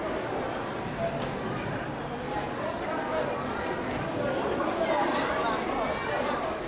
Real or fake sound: real